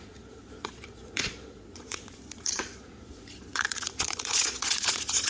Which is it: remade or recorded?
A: remade